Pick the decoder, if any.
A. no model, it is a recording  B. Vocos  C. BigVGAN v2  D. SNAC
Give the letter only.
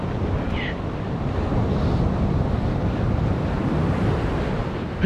A